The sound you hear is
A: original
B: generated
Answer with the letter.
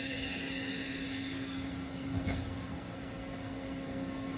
B